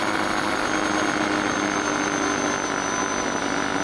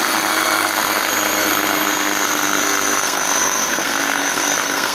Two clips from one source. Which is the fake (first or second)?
second